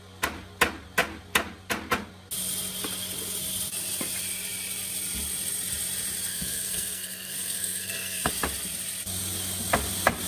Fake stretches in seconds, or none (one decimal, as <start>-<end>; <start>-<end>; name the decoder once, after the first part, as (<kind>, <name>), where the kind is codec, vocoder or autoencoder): 6.3-8.3 (codec, SNAC)